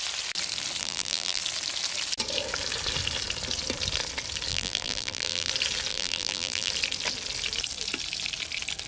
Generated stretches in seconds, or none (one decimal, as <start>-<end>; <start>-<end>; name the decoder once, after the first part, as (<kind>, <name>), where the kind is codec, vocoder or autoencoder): 0.8-1.4 (vocoder, BigVGAN v2); 4.5-5.5; 5.9-6.7